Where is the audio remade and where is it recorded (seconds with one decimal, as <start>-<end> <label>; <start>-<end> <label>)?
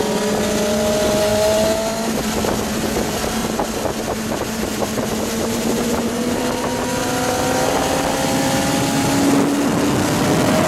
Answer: 0.0-3.4 recorded; 3.4-6.4 remade; 6.4-10.7 recorded